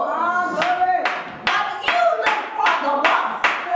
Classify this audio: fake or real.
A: real